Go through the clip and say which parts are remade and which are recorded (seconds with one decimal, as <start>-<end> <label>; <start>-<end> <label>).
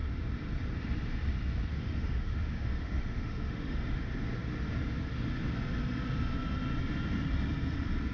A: 0.0-1.7 recorded; 1.7-4.1 remade; 4.1-8.1 recorded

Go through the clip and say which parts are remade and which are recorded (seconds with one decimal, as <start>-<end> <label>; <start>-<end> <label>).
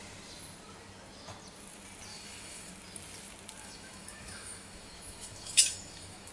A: 0.0-2.1 recorded; 2.1-2.7 remade; 2.7-3.6 recorded; 3.6-6.3 remade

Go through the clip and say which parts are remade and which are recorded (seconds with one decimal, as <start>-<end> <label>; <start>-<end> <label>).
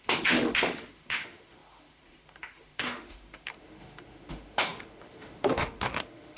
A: 0.0-6.4 remade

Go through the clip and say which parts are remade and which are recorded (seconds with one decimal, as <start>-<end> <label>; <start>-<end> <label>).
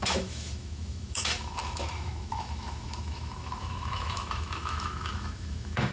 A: 0.0-5.9 remade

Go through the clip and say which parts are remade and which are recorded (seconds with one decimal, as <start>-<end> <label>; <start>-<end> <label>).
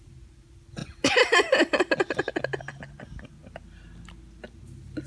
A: 0.0-5.1 recorded